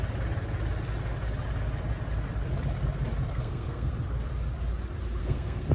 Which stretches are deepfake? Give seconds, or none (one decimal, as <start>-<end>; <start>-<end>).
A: 3.3-3.9; 5.2-5.7